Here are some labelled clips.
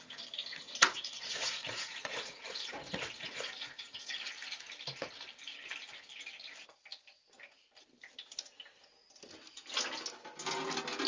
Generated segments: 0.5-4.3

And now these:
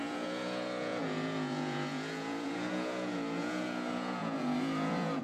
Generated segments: 0.0-5.2

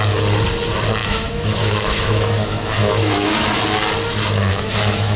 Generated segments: 1.0-3.3; 4.4-5.2

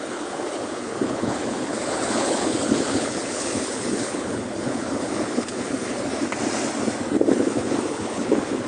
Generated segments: 0.0-6.1; 7.3-8.7

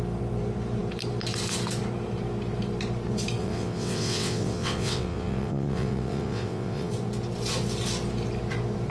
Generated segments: 3.4-6.9